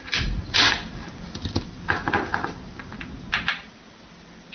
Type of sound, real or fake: real